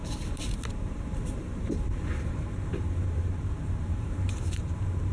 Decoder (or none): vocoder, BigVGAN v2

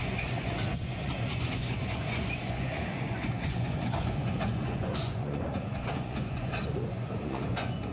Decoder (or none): vocoder, Vocos